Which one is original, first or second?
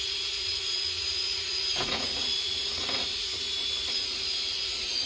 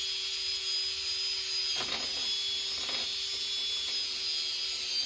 second